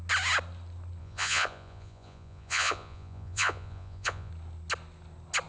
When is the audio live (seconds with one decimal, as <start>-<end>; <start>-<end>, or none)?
0.0-1.0; 4.3-5.5